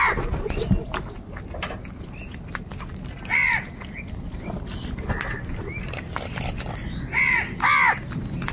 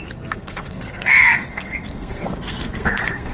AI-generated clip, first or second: second